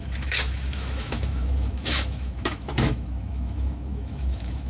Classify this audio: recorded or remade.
remade